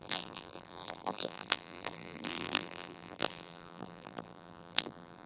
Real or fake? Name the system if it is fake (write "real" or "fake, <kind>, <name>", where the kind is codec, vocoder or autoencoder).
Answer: fake, vocoder, BigVGAN v2